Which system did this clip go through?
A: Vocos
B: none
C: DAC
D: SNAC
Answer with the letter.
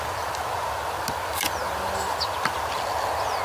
B